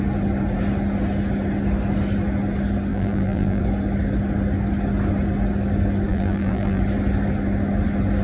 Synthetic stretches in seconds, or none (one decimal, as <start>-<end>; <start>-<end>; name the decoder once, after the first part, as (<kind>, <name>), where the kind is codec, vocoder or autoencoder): 2.9-3.6 (vocoder, BigVGAN v2); 6.1-6.8